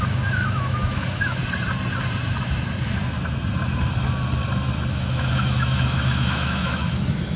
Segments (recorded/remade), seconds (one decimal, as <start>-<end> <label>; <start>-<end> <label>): 0.0-1.4 remade; 1.4-4.9 recorded; 4.9-7.4 remade